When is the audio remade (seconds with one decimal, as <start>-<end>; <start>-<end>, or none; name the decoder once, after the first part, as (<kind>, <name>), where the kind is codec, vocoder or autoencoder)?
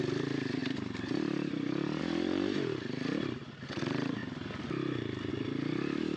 0.6-2.0 (vocoder, BigVGAN v2)